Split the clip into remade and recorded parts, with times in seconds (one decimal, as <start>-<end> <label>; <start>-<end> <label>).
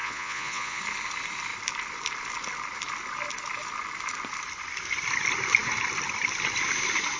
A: 0.0-0.8 remade; 0.8-7.2 recorded